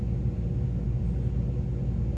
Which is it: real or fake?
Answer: real